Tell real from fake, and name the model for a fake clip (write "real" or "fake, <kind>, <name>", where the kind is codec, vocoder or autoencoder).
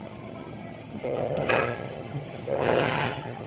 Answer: fake, vocoder, HiFi-GAN